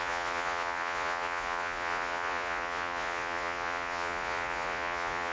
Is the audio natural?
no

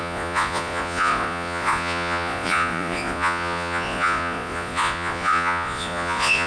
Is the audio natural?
no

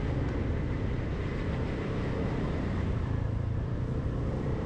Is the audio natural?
no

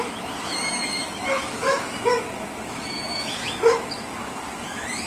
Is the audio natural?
no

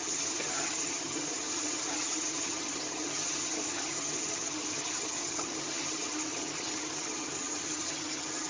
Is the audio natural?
no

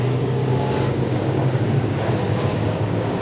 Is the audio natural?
no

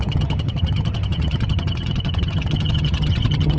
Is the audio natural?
no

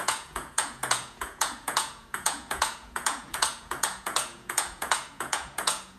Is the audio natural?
no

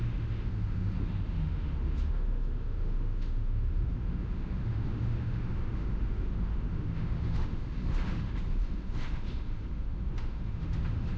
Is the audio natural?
no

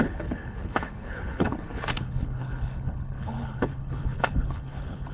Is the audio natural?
no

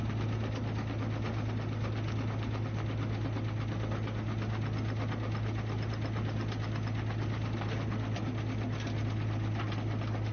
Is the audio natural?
yes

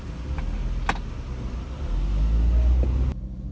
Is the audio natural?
yes